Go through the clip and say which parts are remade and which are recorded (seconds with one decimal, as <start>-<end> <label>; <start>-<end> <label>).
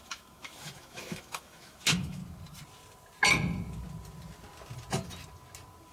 0.0-2.2 remade; 2.2-5.9 recorded